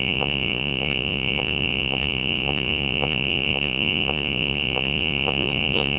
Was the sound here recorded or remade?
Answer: remade